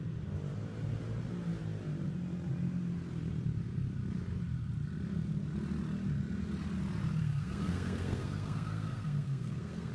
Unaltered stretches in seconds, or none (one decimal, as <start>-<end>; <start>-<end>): 0.0-7.2